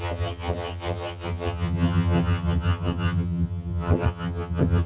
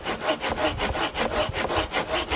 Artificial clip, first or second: first